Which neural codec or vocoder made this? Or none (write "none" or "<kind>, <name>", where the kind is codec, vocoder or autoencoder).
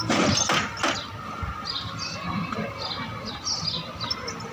none